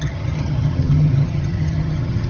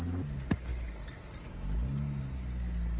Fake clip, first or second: first